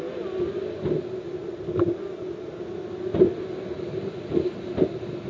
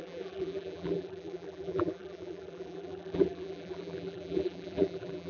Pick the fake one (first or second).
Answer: second